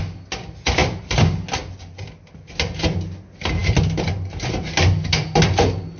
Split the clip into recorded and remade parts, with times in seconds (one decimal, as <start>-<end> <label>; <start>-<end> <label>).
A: 0.0-6.0 recorded